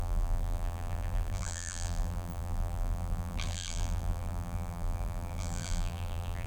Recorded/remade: remade